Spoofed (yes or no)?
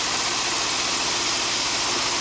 no